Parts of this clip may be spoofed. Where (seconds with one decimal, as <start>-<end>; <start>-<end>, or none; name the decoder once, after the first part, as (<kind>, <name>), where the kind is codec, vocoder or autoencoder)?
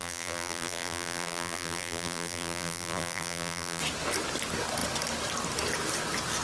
0.0-3.8 (vocoder, BigVGAN v2)